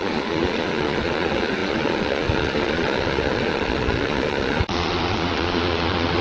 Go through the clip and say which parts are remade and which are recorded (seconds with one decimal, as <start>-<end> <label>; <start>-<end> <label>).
0.0-6.2 remade